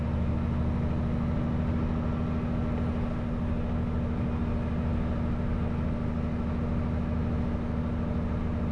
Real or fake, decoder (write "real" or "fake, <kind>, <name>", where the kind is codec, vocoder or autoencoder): real